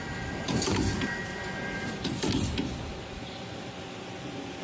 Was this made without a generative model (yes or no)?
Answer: no